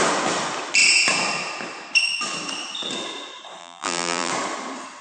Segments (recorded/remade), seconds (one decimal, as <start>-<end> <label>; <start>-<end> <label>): 0.0-3.6 recorded; 3.6-4.3 remade; 4.3-5.0 recorded